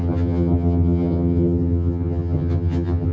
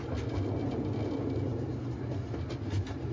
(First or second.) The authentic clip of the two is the second